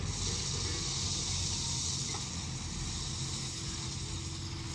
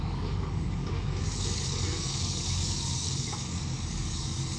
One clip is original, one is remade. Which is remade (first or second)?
second